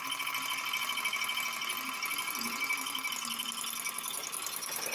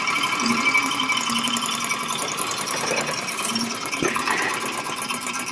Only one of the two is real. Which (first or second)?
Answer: first